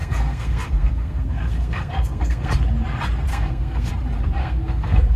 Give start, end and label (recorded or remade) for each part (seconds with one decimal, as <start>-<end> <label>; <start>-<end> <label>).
0.0-2.5 remade; 2.5-3.3 recorded; 3.3-3.9 remade; 3.9-4.4 recorded; 4.4-5.2 remade